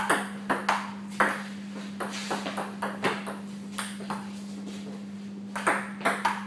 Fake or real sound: real